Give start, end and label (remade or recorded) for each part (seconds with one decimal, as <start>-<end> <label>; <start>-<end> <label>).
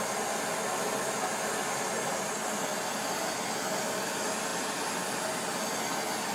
0.0-6.3 recorded